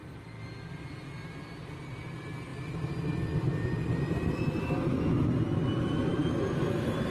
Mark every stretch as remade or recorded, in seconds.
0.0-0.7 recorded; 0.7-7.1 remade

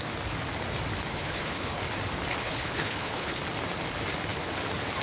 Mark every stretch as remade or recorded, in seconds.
0.0-1.1 recorded; 1.1-1.8 remade; 1.8-2.4 recorded; 2.4-3.4 remade; 3.4-5.0 recorded